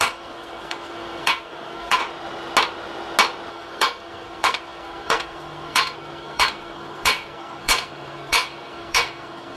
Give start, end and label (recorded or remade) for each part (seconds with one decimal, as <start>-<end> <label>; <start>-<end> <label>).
0.0-2.0 remade; 2.0-3.5 recorded; 3.5-9.6 remade